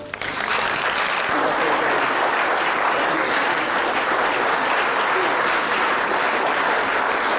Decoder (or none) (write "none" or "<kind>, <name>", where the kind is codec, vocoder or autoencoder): none